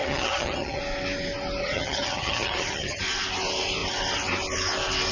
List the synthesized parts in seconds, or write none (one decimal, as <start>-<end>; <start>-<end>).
0.0-0.8; 1.6-3.0